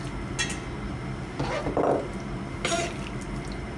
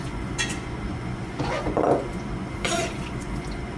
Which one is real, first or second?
first